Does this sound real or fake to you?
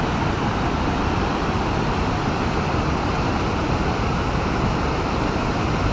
real